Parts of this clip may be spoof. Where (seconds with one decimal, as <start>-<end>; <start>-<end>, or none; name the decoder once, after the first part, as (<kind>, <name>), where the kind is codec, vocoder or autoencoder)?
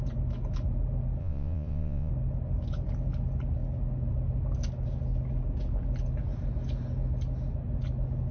1.2-2.1 (vocoder, Vocos)